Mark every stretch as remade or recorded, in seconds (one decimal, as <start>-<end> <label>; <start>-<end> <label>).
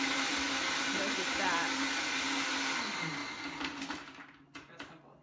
0.0-5.2 recorded